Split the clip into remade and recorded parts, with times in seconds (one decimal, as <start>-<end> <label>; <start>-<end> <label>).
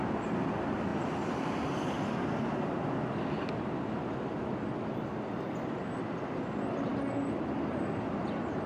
0.0-8.7 recorded